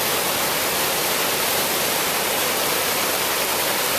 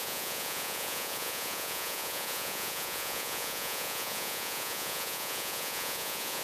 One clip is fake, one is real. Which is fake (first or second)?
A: second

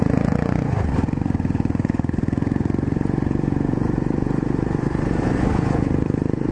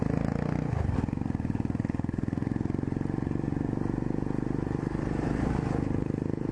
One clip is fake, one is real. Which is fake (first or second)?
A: first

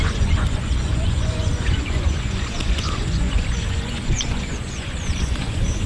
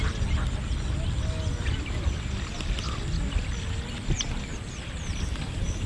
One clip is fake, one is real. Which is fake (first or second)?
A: first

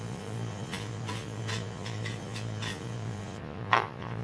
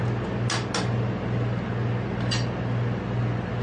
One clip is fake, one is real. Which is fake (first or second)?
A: first